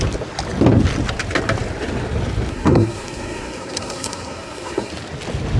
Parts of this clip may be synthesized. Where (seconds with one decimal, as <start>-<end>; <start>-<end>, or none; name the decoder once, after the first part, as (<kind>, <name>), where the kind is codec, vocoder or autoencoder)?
2.5-4.9 (codec, SNAC)